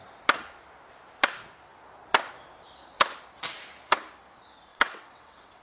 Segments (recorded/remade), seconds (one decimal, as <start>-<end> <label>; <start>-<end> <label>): 0.0-4.7 recorded; 4.7-5.6 remade